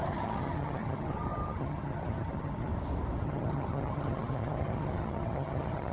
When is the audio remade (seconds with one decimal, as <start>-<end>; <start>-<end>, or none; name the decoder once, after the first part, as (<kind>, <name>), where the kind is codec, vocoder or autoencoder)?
0.0-2.7 (vocoder, HiFi-GAN); 3.2-5.9